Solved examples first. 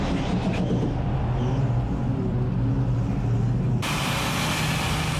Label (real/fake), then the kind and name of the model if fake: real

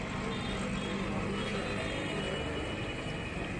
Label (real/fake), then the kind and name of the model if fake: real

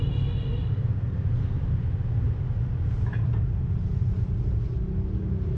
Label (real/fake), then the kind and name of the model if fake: real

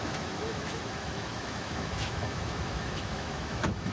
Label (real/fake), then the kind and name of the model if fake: fake, autoencoder, DAC-VAE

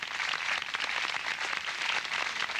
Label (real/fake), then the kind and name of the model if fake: real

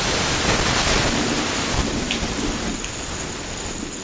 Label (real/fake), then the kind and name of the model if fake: real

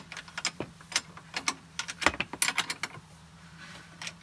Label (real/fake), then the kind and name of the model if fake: real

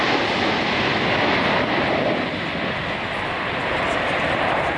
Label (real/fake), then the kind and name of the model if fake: real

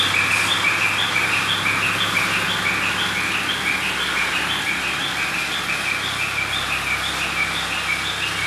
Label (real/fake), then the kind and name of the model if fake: real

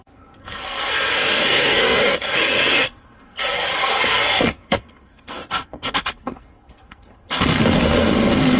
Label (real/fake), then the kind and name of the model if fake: fake, codec, SNAC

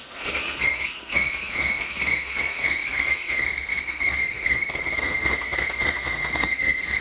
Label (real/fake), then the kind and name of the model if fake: fake, codec, SNAC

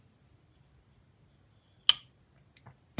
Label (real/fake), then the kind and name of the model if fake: real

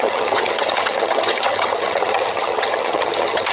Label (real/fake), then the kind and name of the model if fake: fake, vocoder, HiFi-GAN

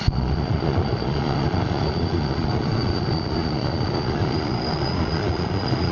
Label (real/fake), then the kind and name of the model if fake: fake, vocoder, Vocos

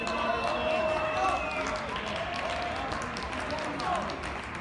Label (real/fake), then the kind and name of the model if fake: real